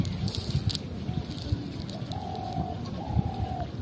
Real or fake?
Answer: real